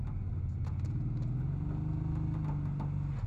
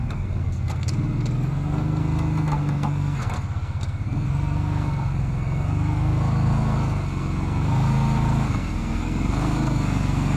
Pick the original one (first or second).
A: first